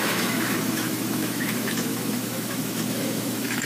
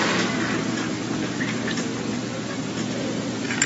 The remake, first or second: first